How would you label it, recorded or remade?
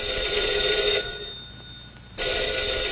recorded